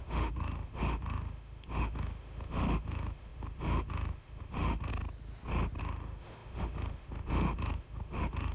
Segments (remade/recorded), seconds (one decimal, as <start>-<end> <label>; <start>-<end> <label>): 0.0-4.9 remade; 4.9-5.8 recorded; 5.8-8.5 remade